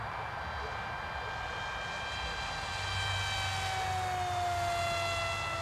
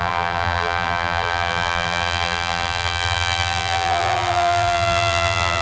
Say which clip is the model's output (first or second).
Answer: second